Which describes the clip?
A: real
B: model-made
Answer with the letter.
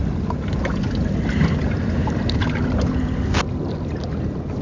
A